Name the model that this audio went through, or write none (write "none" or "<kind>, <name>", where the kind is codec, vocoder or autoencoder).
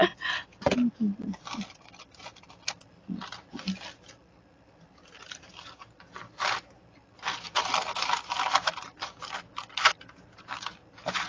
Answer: none